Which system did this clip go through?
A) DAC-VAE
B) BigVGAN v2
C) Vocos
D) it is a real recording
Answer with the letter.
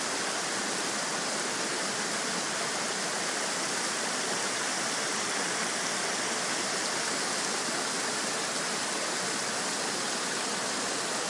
D